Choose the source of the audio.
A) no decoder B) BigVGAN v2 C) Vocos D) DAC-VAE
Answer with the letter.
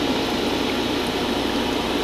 A